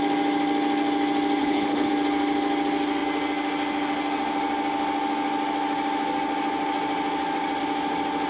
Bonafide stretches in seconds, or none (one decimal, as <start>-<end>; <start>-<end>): 0.0-1.4; 1.9-8.3